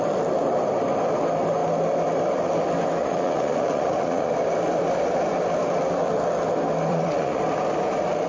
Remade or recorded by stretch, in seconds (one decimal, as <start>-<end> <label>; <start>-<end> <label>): 0.0-3.0 recorded; 3.0-4.3 remade; 4.3-6.9 recorded; 6.9-7.4 remade; 7.4-8.3 recorded